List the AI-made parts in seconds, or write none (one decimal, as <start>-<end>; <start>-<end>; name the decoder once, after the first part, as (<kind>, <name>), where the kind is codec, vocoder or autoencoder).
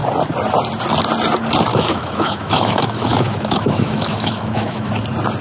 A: 1.7-4.9 (autoencoder, DAC-VAE)